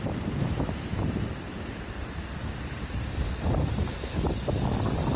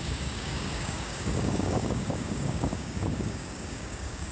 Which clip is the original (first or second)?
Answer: first